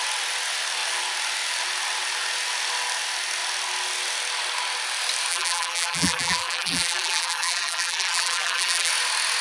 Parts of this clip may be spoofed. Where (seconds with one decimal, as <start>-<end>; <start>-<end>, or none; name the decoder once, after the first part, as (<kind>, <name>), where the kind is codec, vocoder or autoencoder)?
5.3-8.9 (vocoder, BigVGAN v2)